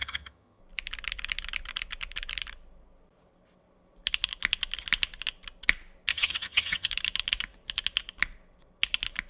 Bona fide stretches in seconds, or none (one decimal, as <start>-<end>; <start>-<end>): 0.6-6.1; 6.9-9.3